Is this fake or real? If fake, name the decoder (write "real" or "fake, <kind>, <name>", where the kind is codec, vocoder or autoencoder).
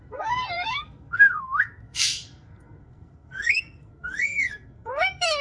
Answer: fake, codec, SNAC